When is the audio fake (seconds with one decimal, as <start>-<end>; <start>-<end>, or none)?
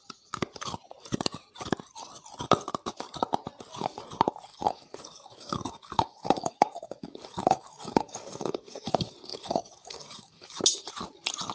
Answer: 4.5-8.9; 9.3-10.6